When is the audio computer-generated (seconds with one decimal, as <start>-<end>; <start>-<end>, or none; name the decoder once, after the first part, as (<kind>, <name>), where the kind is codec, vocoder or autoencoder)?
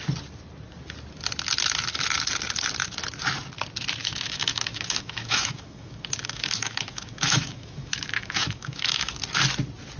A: 4.0-9.2 (autoencoder, DAC-VAE)